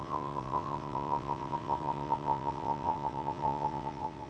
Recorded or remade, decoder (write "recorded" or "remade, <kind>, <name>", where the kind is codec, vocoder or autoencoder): remade, vocoder, WaveNeXt